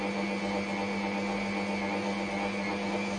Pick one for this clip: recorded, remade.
recorded